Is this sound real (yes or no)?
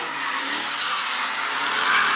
yes